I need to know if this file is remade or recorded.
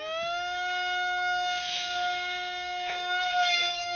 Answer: remade